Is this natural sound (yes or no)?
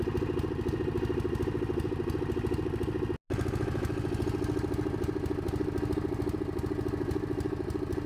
yes